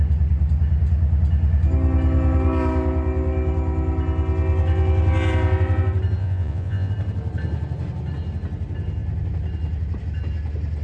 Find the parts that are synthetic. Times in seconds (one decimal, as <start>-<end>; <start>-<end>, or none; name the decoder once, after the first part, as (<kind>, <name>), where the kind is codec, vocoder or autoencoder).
6.2-6.9 (vocoder, Vocos)